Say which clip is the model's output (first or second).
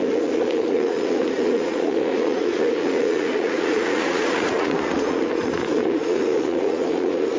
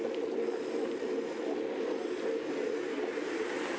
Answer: first